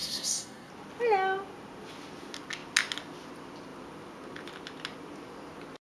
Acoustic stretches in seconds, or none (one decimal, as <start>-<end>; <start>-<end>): 0.7-5.9